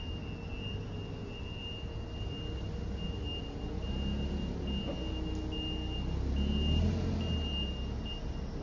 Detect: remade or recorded recorded